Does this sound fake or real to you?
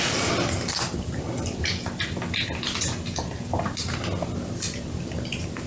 real